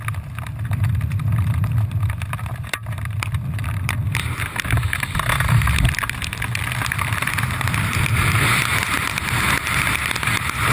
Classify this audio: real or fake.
fake